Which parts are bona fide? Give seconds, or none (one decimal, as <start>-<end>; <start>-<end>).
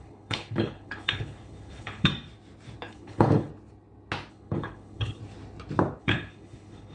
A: 2.1-2.9; 3.5-4.3; 5.2-6.0